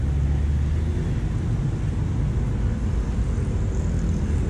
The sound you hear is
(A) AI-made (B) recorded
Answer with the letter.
B